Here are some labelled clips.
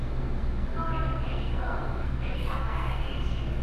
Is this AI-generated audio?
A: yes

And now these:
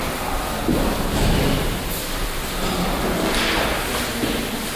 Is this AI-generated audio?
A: no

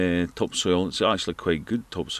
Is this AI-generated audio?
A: no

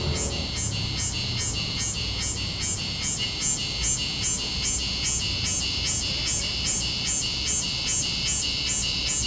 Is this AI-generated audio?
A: no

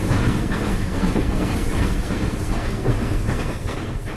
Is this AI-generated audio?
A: yes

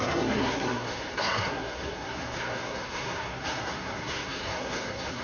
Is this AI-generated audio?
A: yes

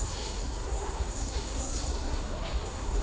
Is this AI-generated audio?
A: yes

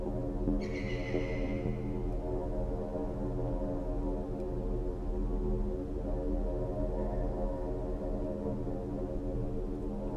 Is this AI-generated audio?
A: no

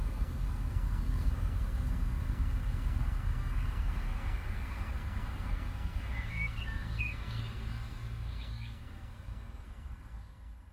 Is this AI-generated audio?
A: yes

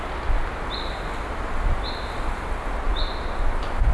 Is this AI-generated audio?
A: no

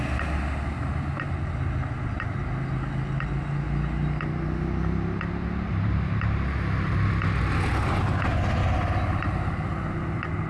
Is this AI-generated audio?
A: no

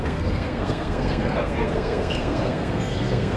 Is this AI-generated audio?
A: yes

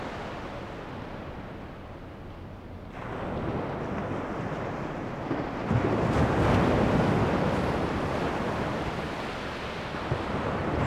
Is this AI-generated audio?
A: no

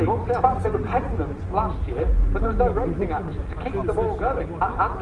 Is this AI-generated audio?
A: no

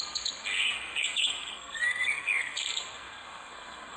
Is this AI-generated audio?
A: yes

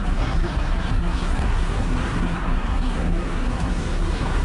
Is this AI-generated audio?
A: yes